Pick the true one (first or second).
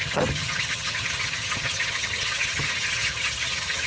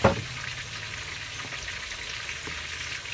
second